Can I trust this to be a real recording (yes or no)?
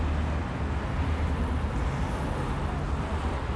yes